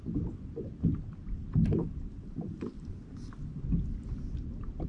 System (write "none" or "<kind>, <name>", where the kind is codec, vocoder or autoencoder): none